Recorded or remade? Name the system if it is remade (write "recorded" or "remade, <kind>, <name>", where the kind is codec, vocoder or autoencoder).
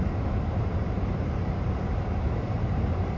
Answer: remade, vocoder, BigVGAN v2